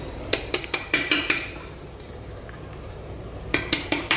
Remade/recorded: remade